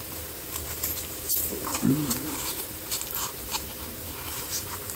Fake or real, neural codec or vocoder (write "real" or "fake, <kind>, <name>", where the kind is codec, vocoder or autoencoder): fake, vocoder, BigVGAN v2